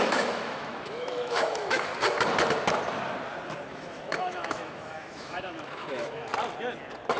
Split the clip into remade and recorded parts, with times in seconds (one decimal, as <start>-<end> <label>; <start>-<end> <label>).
0.0-1.9 remade; 1.9-3.7 recorded; 3.7-6.3 remade; 6.3-7.2 recorded